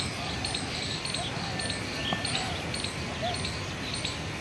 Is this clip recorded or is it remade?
recorded